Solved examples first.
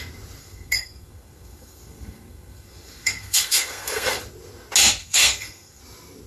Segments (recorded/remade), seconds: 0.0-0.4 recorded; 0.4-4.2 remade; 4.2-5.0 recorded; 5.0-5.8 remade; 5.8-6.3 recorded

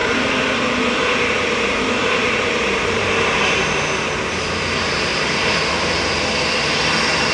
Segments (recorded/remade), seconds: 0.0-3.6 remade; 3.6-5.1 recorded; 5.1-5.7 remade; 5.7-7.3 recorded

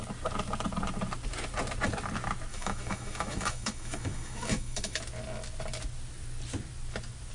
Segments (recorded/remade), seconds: 0.0-2.5 recorded; 2.5-5.0 remade; 5.0-7.3 recorded

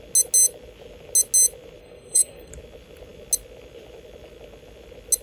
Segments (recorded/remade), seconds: 0.0-1.8 recorded; 1.8-2.5 remade; 2.5-5.2 recorded